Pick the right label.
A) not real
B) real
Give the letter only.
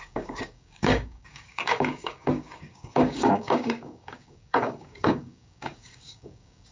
A